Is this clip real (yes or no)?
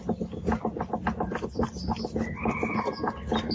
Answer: yes